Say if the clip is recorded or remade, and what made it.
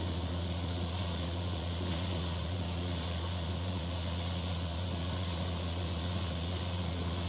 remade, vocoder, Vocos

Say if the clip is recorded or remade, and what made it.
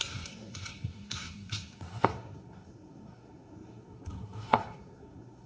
remade, codec, SNAC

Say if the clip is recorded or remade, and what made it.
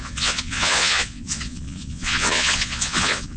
remade, vocoder, Vocos